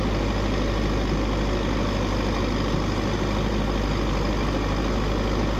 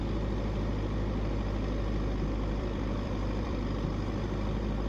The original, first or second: first